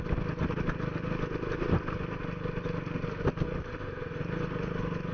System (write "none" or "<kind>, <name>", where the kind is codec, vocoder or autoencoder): none